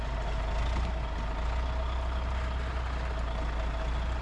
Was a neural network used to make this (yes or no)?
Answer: no